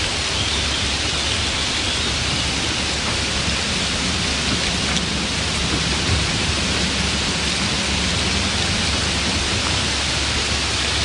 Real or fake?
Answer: real